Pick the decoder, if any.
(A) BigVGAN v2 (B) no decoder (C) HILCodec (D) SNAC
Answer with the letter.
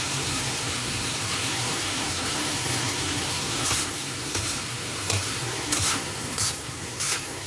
D